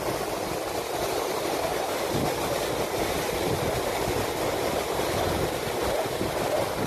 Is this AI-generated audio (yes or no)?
no